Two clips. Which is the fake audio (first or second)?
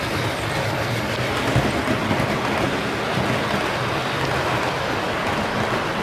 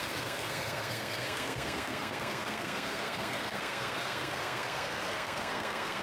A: second